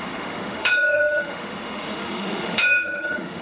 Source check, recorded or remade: remade